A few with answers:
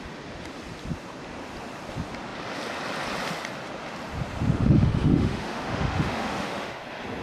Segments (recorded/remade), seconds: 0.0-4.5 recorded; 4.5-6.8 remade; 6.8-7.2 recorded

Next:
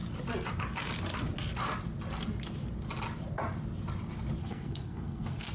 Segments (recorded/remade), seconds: 0.0-4.4 recorded; 4.4-5.5 remade

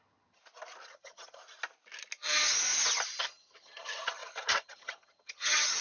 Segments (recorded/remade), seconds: 0.0-0.4 remade; 0.4-0.9 recorded; 0.9-1.4 remade; 1.4-3.2 recorded; 3.2-5.8 remade

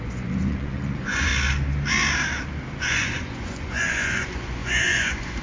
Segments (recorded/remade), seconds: 0.0-1.3 remade; 1.3-2.8 recorded; 2.8-5.4 remade

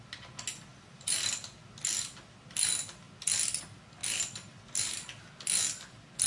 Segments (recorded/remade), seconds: 0.0-6.3 recorded